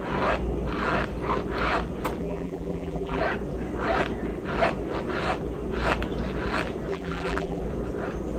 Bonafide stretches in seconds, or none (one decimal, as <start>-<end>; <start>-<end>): 0.0-2.2; 3.2-6.9; 7.6-8.4